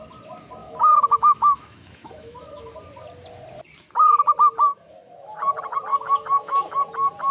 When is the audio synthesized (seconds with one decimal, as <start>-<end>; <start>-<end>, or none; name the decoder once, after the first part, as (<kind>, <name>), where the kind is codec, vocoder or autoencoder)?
0.6-2.7 (autoencoder, DAC-VAE); 4.7-5.4; 5.9-6.8